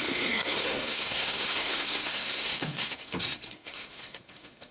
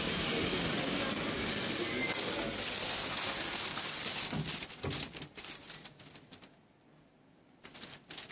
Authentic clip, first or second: second